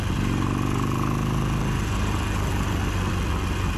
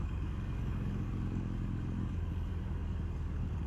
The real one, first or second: first